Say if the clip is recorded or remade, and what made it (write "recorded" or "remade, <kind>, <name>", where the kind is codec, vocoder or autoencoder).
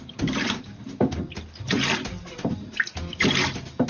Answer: recorded